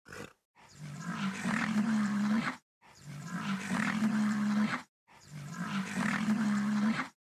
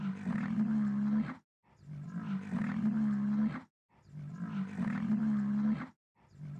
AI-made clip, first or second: first